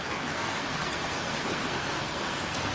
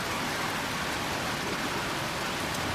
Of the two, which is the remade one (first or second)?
first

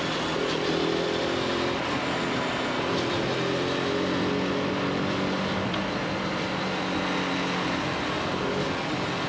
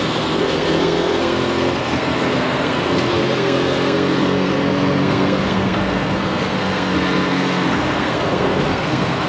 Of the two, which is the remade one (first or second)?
second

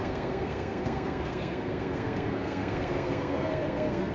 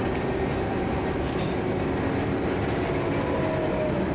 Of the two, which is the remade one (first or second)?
first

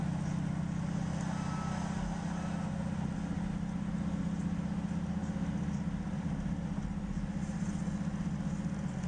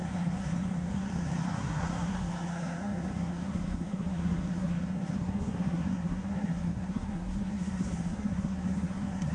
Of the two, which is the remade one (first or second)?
second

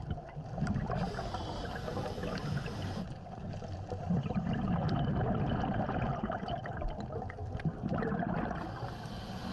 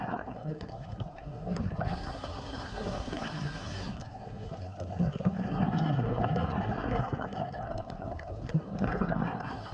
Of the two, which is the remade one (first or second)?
second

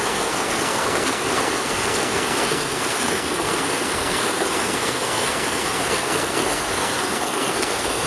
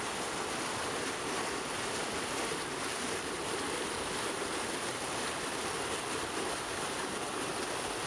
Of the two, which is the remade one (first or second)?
first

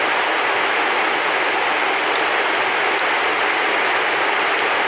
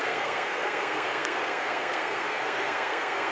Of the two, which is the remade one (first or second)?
second